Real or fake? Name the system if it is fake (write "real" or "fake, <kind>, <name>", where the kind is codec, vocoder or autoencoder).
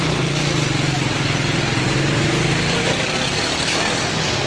real